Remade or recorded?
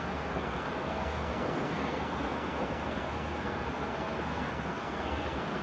remade